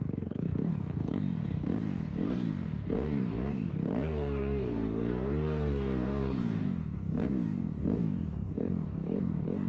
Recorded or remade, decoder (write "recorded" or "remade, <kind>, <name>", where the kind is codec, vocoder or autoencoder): remade, codec, DAC